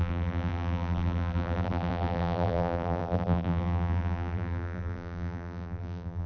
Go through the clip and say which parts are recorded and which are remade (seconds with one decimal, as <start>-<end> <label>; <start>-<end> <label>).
0.0-6.3 remade